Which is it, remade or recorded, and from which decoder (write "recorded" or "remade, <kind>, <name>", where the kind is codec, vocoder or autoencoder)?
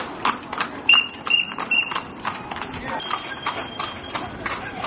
remade, vocoder, BigVGAN v2